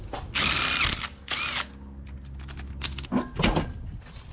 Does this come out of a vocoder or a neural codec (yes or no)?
no